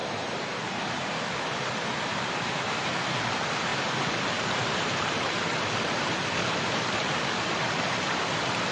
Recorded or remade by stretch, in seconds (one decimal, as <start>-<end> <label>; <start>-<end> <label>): 0.0-0.6 remade; 0.6-1.9 recorded; 1.9-2.8 remade; 2.8-3.7 recorded; 3.7-5.6 remade; 5.6-8.7 recorded